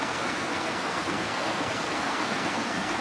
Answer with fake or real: fake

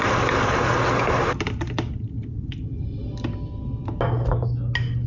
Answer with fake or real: real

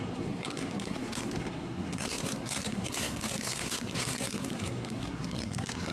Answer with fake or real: fake